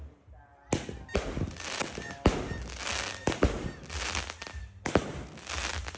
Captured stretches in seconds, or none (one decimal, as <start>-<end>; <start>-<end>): 0.0-6.0